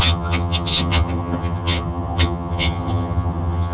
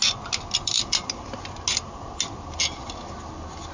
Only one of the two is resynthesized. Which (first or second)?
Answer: first